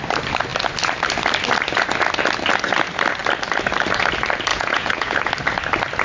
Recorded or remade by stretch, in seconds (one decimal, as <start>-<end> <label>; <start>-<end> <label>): 0.0-4.5 recorded; 4.5-5.3 remade; 5.3-6.0 recorded